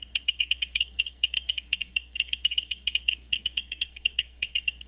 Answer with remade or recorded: remade